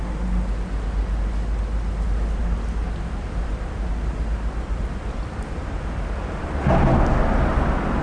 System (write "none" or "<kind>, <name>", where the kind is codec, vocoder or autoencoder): none